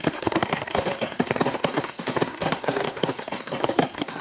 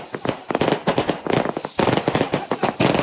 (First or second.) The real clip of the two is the second